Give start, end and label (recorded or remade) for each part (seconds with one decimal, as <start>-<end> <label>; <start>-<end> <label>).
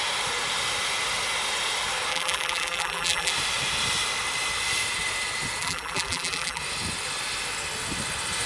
0.0-2.1 recorded; 2.1-3.3 remade; 3.3-5.6 recorded; 5.6-6.6 remade; 6.6-8.5 recorded